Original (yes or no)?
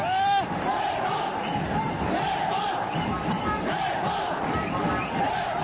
no